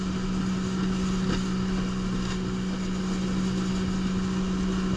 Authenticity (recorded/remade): recorded